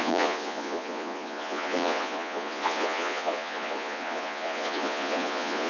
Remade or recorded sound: remade